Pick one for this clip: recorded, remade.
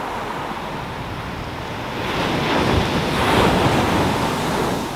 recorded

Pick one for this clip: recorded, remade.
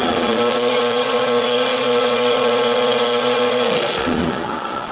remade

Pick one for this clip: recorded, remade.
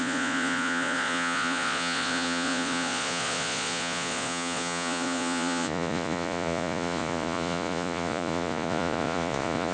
remade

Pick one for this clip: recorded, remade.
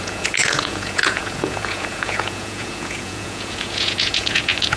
remade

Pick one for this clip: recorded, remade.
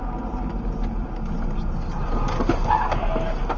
recorded